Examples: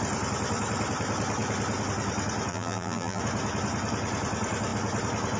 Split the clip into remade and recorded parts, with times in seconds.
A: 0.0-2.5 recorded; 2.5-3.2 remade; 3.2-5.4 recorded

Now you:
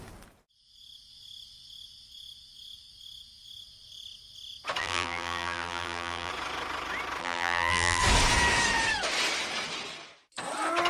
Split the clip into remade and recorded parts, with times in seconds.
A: 0.0-4.8 recorded; 4.8-6.3 remade; 6.3-7.2 recorded; 7.2-8.0 remade; 8.0-10.9 recorded